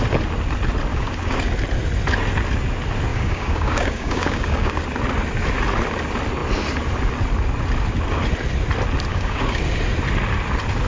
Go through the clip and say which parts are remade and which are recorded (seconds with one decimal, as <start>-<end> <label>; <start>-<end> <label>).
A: 0.0-0.9 recorded; 0.9-1.4 remade; 1.4-3.1 recorded; 3.1-4.8 remade; 4.8-9.1 recorded; 9.1-9.6 remade; 9.6-10.9 recorded